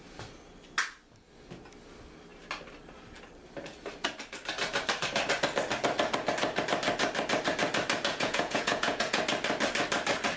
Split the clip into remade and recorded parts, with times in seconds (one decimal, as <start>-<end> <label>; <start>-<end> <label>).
0.0-8.1 recorded; 8.1-9.2 remade; 9.2-10.4 recorded